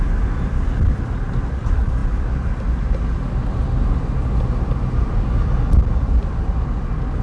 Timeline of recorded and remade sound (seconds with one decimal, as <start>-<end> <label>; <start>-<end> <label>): 0.0-7.2 recorded